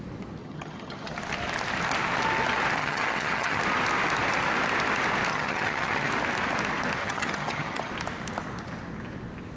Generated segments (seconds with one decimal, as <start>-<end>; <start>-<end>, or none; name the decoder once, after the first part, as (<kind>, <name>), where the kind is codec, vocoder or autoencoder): 0.4-1.1 (vocoder, HiFi-GAN); 2.8-3.6; 5.3-6.1; 7.0-7.9